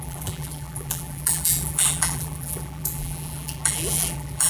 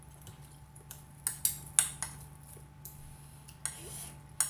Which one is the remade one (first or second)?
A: first